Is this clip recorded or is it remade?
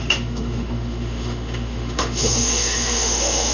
remade